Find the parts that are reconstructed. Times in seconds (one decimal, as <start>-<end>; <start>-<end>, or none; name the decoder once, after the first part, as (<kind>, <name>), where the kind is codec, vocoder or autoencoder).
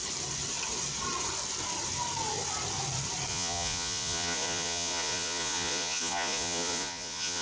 3.3-7.4 (vocoder, Vocos)